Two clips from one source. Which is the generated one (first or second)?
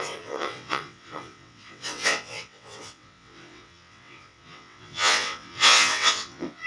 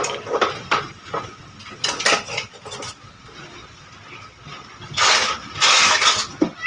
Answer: first